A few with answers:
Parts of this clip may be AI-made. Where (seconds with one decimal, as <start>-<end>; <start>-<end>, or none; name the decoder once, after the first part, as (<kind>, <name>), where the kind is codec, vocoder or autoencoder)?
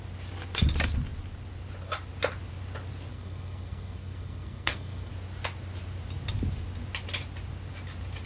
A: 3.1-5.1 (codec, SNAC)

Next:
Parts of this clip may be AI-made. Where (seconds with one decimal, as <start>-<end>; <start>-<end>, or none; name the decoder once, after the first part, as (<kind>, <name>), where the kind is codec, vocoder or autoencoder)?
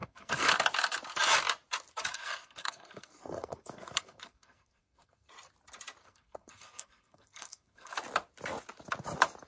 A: 0.0-0.5 (codec, SNAC); 2.1-5.3; 6.0-7.9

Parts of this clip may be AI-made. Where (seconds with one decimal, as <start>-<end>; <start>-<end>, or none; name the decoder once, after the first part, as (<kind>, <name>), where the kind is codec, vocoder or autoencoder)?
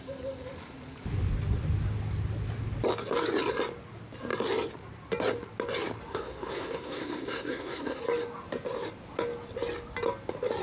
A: 6.1-8.0 (codec, SNAC)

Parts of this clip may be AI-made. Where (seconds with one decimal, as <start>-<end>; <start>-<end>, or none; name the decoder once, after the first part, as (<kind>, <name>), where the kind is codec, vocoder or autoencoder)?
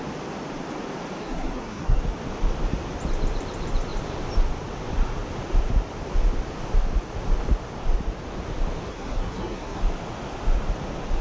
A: 1.2-2.0 (codec, SNAC); 8.9-9.8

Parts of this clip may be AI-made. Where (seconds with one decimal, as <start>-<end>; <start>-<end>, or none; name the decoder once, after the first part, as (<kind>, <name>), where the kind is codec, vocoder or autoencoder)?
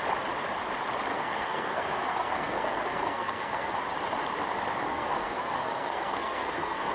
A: 1.1-3.7 (codec, SNAC); 4.9-6.9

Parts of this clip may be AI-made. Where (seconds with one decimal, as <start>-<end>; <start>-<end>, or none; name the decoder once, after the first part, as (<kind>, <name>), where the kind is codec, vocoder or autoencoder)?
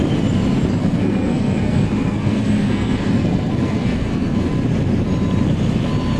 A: 0.8-4.5 (codec, SNAC)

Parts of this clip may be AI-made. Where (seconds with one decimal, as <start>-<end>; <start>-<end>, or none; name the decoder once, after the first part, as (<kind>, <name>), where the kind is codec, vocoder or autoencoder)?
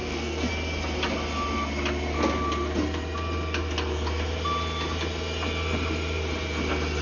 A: 0.0-0.5 (codec, SNAC)